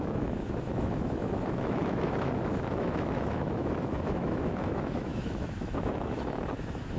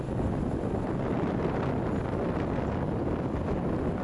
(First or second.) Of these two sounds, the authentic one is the second